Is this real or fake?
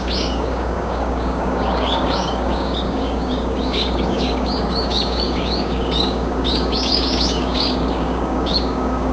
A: fake